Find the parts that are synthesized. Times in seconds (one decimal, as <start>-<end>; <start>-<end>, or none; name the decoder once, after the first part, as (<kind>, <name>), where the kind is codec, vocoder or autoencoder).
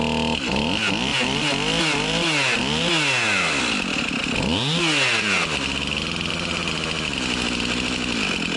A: none